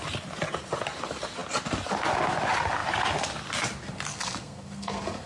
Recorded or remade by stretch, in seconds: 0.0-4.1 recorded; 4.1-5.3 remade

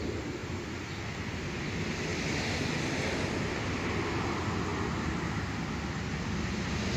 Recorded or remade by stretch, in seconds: 0.0-7.0 recorded

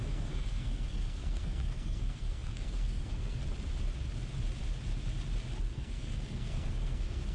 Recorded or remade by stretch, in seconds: 0.0-3.4 remade; 3.4-5.6 recorded; 5.6-7.3 remade

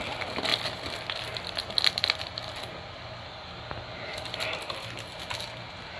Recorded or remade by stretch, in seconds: 0.0-6.0 recorded

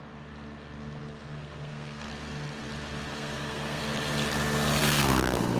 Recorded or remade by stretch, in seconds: 0.0-1.0 recorded; 1.0-2.1 remade; 2.1-3.1 recorded; 3.1-3.8 remade; 3.8-4.8 recorded; 4.8-5.6 remade

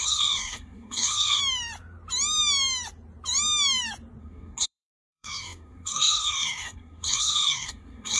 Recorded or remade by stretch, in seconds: 0.0-1.4 remade; 1.4-4.2 recorded; 4.2-8.2 remade

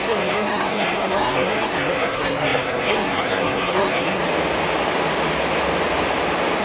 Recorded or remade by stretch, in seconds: 0.0-4.2 remade; 4.2-6.6 recorded

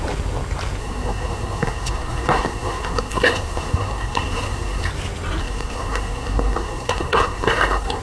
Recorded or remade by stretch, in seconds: 0.0-0.8 recorded; 0.8-4.9 remade; 4.9-5.4 recorded; 5.4-8.0 remade